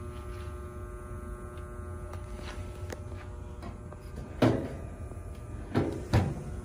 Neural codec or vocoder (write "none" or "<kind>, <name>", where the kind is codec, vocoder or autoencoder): none